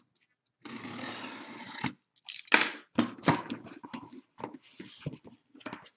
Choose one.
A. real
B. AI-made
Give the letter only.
A